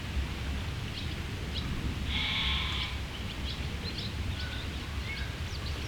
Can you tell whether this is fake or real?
real